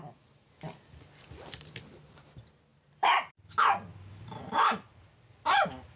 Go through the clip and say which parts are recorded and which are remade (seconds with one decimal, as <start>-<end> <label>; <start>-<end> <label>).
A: 0.0-2.7 recorded; 2.7-3.3 remade; 3.3-3.9 recorded; 3.9-5.1 remade; 5.1-6.0 recorded

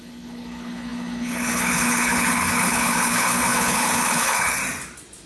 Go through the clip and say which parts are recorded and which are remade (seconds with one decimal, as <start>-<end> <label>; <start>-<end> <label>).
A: 0.0-4.6 remade; 4.6-5.3 recorded